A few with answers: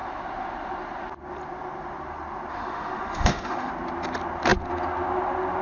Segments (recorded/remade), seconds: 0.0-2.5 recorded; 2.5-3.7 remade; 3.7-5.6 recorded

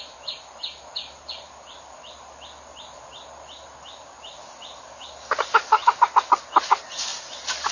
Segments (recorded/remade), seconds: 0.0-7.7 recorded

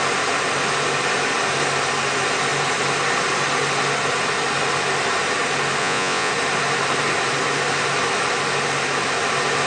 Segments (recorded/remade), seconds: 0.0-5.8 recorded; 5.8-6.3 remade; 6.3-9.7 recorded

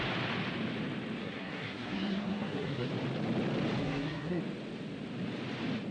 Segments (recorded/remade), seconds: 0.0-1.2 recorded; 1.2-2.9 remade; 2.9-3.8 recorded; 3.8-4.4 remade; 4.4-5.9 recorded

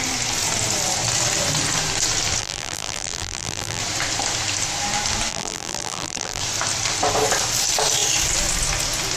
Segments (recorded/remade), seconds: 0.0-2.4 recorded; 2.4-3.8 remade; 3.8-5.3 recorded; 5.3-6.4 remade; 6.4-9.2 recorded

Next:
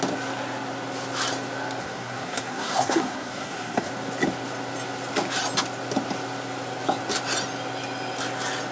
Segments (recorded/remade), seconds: 0.0-1.8 recorded; 1.8-3.9 remade; 3.9-8.7 recorded

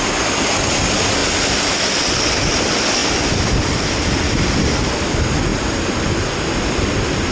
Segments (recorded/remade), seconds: 0.0-7.3 recorded

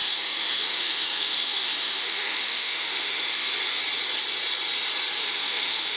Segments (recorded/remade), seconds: 0.0-3.5 remade; 3.5-5.2 recorded; 5.2-6.0 remade